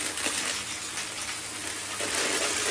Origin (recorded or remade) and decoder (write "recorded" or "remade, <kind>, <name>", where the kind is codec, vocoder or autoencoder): recorded